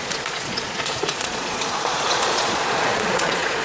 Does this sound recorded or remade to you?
remade